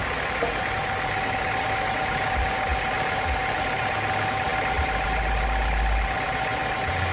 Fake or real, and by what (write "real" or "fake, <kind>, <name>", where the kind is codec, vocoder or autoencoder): real